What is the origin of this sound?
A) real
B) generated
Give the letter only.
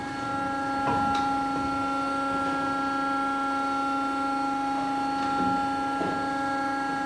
A